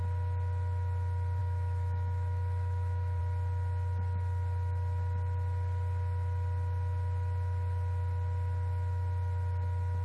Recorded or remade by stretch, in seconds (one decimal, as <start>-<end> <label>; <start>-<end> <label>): 0.0-1.4 recorded; 1.4-3.2 remade; 3.2-10.0 recorded